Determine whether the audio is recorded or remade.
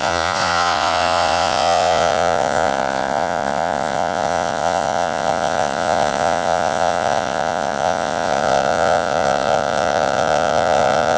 remade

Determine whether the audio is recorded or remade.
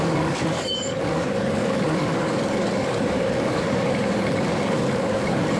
remade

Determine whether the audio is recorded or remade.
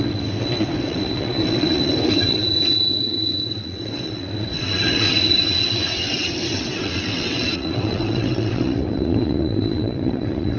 remade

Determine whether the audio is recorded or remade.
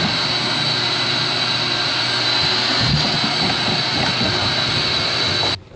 recorded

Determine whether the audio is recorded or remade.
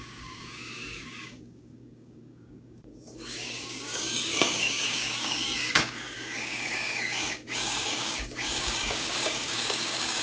remade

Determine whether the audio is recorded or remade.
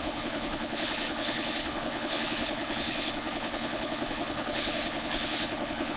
remade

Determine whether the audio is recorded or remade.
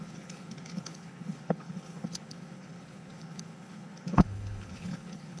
remade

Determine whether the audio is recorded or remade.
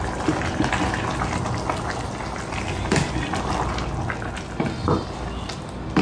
recorded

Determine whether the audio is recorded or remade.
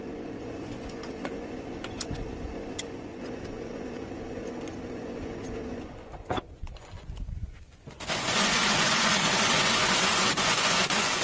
remade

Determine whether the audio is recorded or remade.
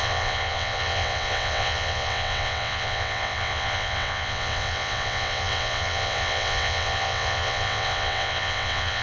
remade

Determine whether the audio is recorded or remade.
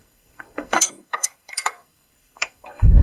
remade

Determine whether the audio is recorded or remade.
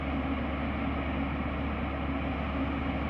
recorded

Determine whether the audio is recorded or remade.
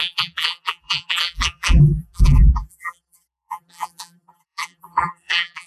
remade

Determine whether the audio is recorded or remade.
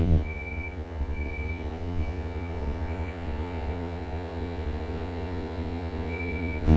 remade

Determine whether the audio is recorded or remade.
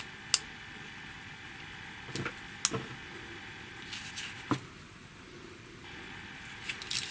recorded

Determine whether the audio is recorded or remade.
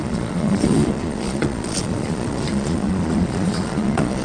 remade